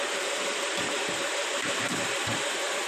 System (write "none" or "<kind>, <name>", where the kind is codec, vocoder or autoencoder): vocoder, BigVGAN v2